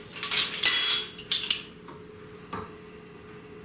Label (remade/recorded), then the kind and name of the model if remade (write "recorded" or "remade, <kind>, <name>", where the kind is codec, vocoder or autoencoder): recorded